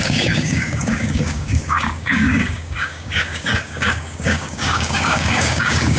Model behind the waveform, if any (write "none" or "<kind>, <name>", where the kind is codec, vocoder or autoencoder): codec, DAC